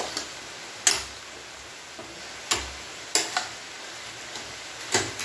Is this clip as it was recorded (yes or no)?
yes